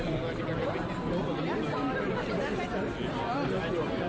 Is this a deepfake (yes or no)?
no